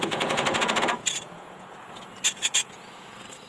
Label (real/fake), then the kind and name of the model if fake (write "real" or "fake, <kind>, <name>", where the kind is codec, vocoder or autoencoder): fake, vocoder, Vocos